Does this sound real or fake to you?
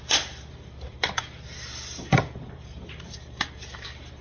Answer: fake